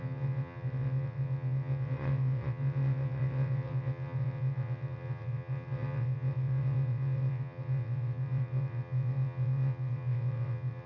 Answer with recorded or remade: remade